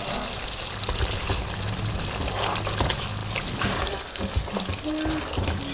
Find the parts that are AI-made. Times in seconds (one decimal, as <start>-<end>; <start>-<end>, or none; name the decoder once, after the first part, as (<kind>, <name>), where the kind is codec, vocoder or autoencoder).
none